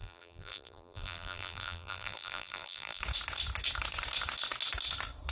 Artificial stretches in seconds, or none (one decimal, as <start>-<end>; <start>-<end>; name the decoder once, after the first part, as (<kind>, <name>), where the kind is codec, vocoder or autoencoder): 0.0-3.0 (vocoder, BigVGAN v2)